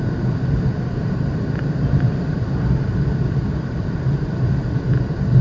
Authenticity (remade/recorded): remade